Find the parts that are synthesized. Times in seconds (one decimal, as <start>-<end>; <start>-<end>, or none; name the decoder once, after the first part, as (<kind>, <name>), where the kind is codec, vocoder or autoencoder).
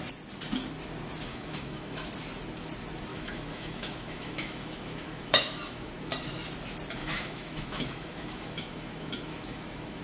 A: 1.3-2.1 (autoencoder, DAC-VAE); 3.1-5.9; 7.0-10.0